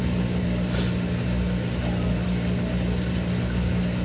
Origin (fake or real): real